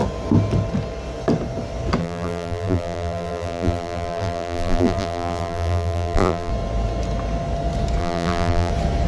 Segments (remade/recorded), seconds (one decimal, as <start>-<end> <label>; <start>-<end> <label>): 0.0-2.0 recorded; 2.0-6.5 remade; 6.5-8.0 recorded; 8.0-8.7 remade; 8.7-9.1 recorded